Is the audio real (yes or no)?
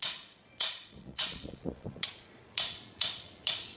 no